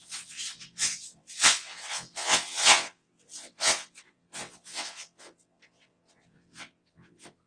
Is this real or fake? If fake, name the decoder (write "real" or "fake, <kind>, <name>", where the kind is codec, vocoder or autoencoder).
fake, vocoder, WaveNeXt